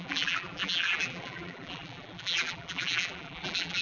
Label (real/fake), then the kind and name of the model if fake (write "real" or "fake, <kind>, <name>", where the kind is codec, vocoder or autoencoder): fake, vocoder, BigVGAN v2